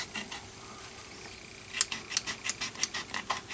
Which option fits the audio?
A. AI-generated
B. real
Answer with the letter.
B